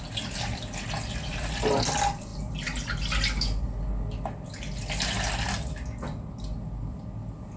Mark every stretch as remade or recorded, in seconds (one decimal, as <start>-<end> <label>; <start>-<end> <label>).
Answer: 0.0-7.6 recorded